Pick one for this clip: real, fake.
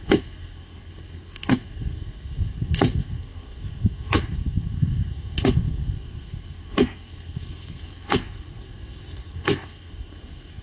fake